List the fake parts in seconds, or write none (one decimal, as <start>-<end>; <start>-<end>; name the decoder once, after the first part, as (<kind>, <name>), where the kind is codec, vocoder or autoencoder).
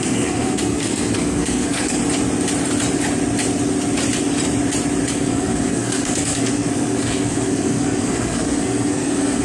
0.0-2.0 (codec, SNAC); 5.1-9.4